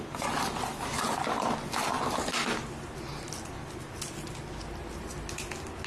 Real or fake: real